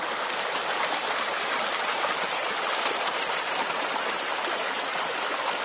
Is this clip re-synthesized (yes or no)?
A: no